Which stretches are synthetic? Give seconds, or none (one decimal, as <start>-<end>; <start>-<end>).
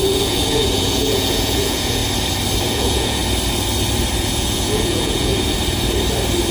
0.0-2.0; 2.7-3.2; 4.2-5.3